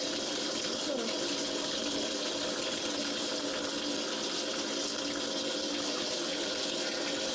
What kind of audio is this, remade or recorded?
recorded